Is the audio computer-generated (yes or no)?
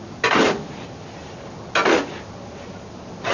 no